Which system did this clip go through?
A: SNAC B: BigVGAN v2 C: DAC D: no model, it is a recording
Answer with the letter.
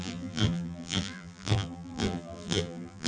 B